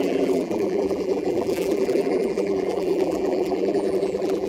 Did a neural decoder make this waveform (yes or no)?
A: yes